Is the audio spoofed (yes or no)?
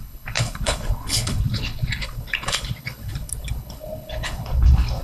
yes